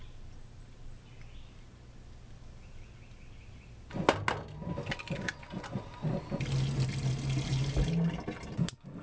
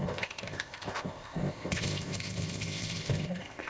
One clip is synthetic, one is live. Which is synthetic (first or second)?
second